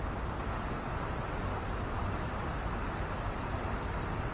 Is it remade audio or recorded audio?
recorded